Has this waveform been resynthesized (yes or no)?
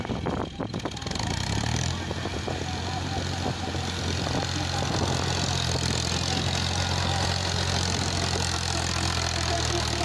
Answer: no